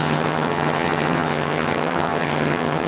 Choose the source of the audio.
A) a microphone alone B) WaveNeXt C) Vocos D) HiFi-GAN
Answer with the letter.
D